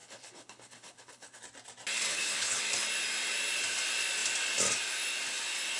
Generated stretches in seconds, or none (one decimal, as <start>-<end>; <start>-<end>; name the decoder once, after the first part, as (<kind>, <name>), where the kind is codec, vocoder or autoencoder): 0.0-1.4 (codec, HILCodec); 2.1-2.6